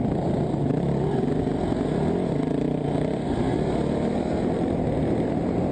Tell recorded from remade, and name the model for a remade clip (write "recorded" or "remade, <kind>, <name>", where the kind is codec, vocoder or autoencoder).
recorded